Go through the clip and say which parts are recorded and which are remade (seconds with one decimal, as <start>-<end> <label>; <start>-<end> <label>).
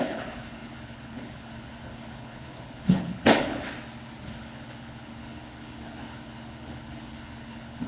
0.0-3.7 remade; 3.7-4.4 recorded; 4.4-7.9 remade